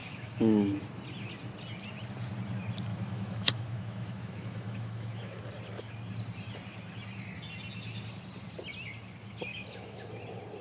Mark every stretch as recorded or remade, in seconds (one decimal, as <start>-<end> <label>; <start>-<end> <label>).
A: 0.0-1.0 remade; 1.0-2.9 recorded; 2.9-5.4 remade; 5.4-9.5 recorded; 9.5-10.1 remade; 10.1-10.6 recorded